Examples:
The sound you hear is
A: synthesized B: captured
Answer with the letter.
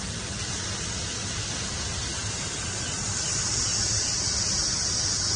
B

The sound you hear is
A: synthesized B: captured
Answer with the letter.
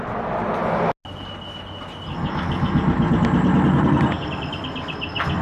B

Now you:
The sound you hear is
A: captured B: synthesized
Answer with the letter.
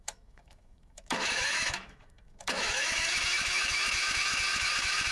B